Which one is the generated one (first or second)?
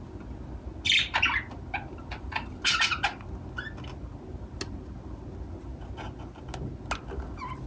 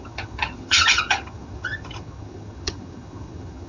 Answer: second